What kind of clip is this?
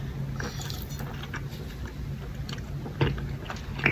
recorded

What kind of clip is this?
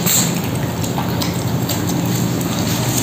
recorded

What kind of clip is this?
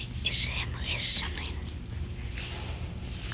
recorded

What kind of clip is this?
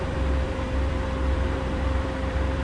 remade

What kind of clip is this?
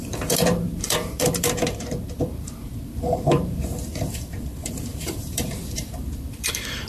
remade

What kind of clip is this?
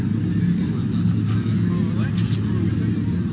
recorded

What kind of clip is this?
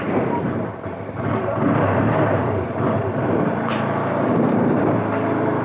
remade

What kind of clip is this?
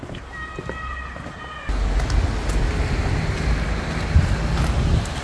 recorded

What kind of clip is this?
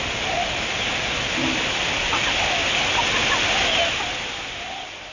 recorded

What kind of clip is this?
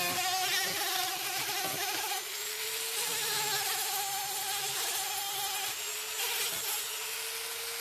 recorded